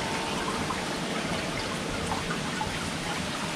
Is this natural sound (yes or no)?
yes